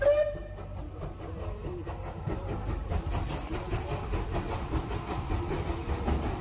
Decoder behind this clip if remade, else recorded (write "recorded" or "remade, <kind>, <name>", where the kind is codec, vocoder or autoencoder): recorded